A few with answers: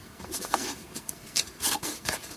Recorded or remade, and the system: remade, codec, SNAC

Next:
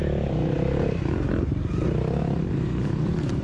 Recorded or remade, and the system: recorded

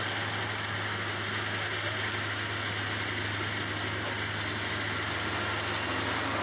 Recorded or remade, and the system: recorded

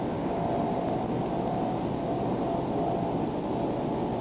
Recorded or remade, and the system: recorded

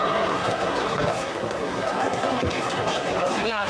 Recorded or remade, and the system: remade, codec, SNAC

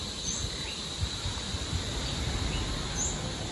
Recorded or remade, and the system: recorded